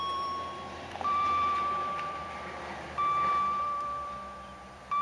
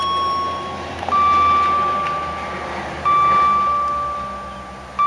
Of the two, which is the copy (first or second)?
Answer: first